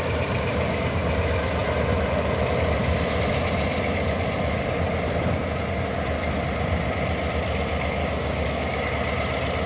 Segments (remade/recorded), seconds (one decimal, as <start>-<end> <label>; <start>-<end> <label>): 0.0-0.5 recorded; 0.5-1.1 remade; 1.1-8.0 recorded; 8.0-8.9 remade; 8.9-9.7 recorded